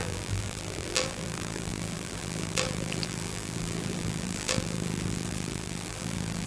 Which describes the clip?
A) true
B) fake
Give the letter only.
B